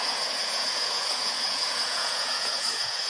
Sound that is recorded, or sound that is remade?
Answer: remade